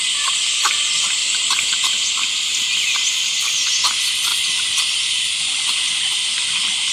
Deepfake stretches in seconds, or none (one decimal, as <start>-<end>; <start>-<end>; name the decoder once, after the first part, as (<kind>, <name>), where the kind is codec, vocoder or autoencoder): none